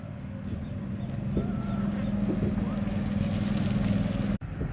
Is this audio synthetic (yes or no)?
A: no